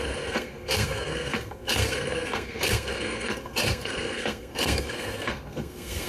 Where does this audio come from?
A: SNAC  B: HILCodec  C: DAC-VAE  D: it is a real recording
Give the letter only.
A